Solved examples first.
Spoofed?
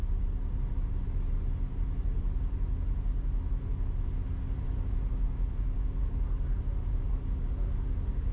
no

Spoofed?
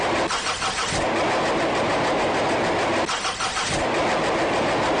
no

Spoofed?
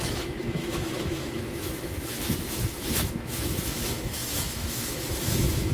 yes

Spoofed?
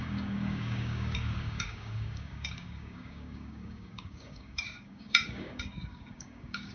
yes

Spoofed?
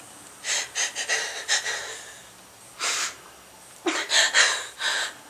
no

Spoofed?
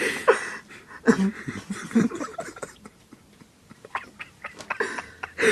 no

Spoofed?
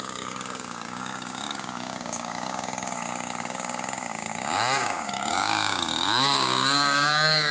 yes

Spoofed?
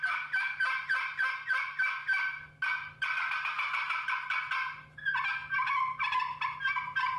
no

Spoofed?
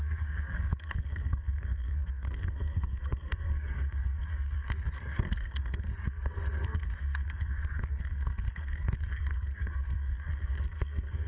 yes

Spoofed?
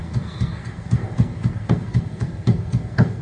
yes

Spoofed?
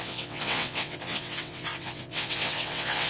yes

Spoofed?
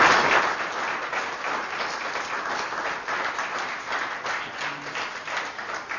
no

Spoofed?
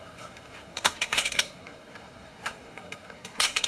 yes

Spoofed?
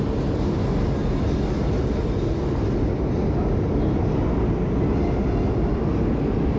no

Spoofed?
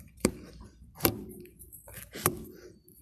yes